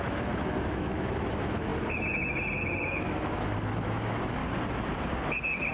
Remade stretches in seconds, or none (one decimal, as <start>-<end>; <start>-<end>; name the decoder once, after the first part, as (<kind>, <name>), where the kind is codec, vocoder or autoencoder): 0.0-4.4 (autoencoder, DAC-VAE)